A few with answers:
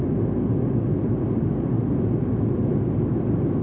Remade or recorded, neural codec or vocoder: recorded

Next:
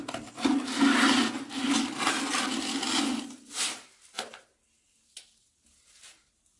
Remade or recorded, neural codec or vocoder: recorded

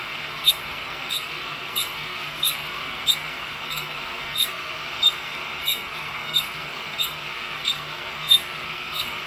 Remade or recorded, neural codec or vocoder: remade, codec, SNAC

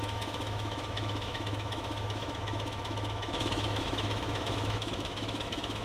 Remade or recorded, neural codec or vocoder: remade, autoencoder, DAC-VAE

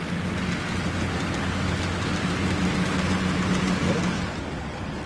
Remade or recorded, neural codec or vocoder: recorded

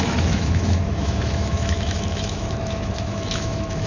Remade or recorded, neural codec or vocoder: remade, autoencoder, DAC-VAE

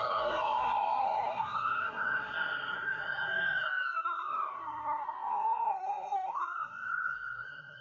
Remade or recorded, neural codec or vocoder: remade, codec, SNAC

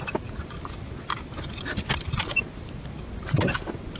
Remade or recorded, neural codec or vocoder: recorded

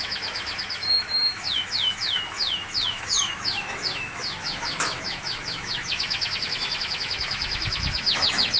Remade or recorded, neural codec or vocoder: remade, autoencoder, DAC-VAE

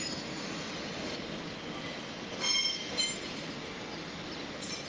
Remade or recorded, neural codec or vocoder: recorded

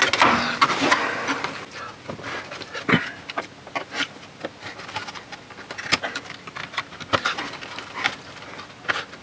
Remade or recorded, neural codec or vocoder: recorded